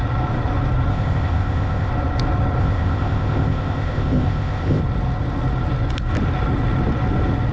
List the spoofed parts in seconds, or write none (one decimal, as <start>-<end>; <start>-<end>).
0.9-1.9; 2.6-4.8